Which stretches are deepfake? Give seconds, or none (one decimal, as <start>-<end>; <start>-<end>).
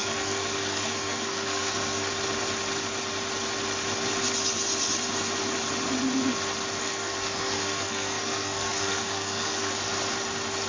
0.0-2.1; 6.8-9.7